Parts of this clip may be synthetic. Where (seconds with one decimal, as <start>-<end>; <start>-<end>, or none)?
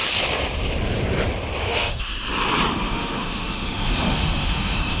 1.6-2.1; 2.7-5.0